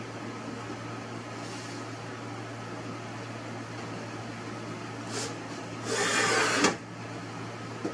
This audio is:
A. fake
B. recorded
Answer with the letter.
B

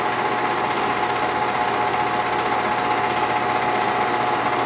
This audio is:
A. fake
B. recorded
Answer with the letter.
B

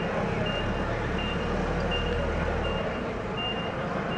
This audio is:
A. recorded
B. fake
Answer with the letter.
B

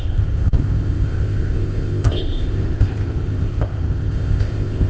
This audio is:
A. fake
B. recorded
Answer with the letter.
A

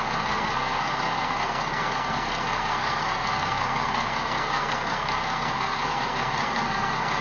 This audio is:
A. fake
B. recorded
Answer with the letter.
A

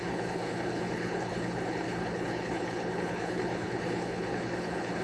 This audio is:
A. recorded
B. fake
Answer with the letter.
B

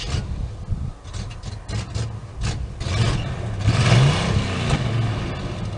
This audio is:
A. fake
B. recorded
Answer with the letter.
B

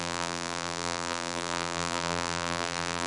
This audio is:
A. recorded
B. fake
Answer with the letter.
B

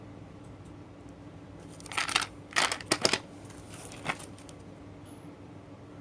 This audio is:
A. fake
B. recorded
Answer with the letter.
B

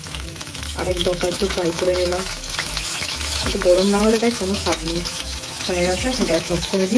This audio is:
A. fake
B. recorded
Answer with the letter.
A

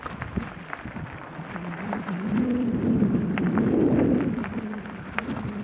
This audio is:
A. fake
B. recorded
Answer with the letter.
B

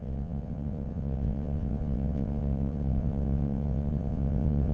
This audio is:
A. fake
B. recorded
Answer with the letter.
A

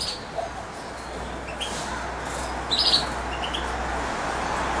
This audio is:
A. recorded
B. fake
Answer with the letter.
A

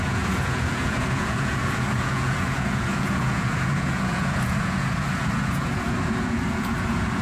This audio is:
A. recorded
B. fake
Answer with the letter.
B